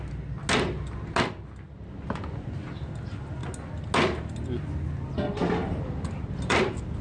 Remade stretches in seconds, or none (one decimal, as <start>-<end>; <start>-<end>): none